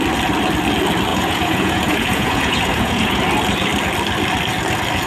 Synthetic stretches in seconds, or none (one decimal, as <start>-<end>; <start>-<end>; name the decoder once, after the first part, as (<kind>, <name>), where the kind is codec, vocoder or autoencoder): 1.1-3.2 (vocoder, Vocos)